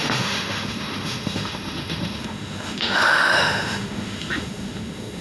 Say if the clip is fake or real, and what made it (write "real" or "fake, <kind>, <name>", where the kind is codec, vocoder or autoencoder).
fake, autoencoder, DAC-VAE